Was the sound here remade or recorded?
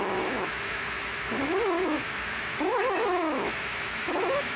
remade